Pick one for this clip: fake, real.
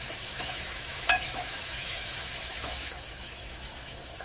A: fake